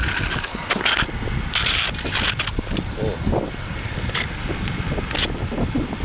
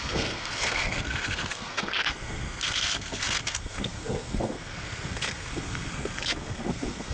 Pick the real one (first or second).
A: first